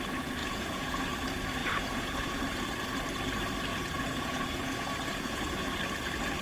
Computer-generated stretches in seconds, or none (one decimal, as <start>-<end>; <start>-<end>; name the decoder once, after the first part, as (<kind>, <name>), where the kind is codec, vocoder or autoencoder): 0.4-1.1 (vocoder, Vocos); 1.6-2.4; 3.7-5.8